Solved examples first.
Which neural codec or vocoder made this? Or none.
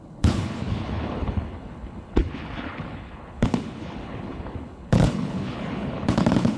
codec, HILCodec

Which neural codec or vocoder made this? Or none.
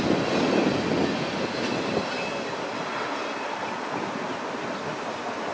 none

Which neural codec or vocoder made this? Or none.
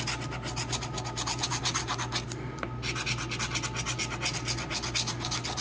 none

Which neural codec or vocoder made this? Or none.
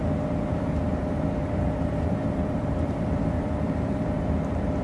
vocoder, BigVGAN v2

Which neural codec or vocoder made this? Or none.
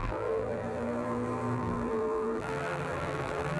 vocoder, BigVGAN v2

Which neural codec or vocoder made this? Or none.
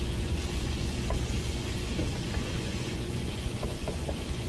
vocoder, Vocos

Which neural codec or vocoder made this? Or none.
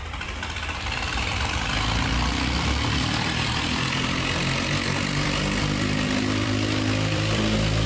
vocoder, BigVGAN v2